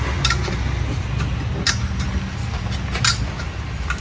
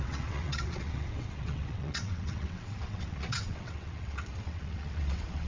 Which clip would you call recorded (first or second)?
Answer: first